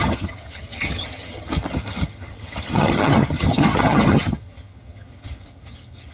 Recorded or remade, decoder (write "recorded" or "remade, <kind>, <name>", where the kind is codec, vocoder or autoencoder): remade, vocoder, HiFi-GAN